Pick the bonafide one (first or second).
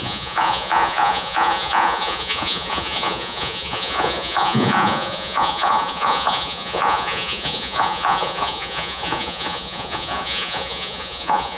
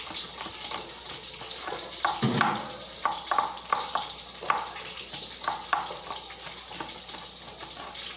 second